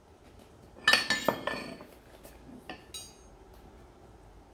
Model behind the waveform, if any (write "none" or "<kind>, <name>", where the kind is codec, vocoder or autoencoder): none